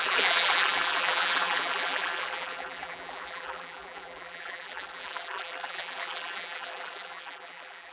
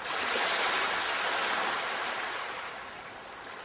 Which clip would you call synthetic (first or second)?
first